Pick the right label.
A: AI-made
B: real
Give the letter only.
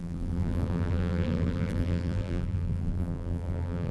A